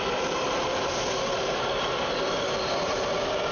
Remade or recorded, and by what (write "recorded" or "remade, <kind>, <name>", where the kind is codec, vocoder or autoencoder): recorded